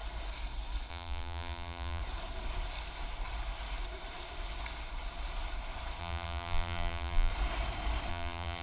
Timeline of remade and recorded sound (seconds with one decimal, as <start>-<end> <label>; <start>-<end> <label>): 0.0-0.9 recorded; 0.9-2.0 remade; 2.0-6.0 recorded; 6.0-7.3 remade; 7.3-8.1 recorded; 8.1-8.6 remade